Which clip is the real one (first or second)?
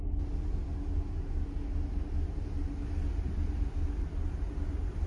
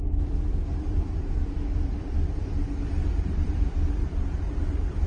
first